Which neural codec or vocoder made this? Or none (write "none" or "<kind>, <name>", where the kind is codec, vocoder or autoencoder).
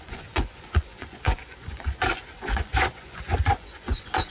vocoder, Vocos